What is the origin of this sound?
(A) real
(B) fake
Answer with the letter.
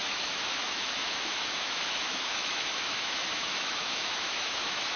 B